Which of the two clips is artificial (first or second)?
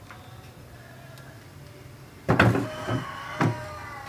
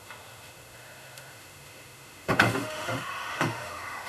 second